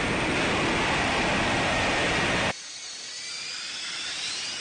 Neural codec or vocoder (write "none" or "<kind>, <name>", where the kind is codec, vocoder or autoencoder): none